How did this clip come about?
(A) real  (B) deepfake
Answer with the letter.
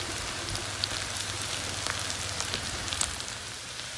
A